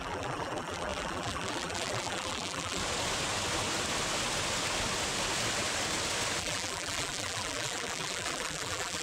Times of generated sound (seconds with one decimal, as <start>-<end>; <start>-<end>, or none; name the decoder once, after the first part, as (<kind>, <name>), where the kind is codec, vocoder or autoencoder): 0.0-2.8 (vocoder, BigVGAN v2); 6.4-9.0